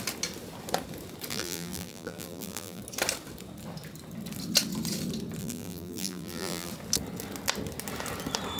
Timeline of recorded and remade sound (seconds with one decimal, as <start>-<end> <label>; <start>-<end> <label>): 0.0-1.3 recorded; 1.3-2.8 remade; 2.8-5.4 recorded; 5.4-6.7 remade; 6.7-8.6 recorded